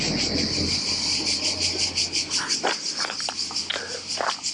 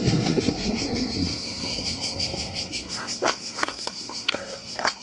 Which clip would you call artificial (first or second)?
second